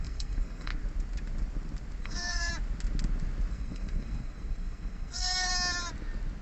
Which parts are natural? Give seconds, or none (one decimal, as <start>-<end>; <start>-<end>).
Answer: 0.7-2.0; 2.5-3.5; 5.5-6.4